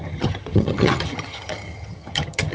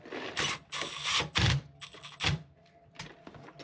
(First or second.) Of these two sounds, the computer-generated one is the first